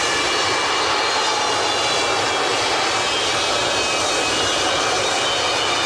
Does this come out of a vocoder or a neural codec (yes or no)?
no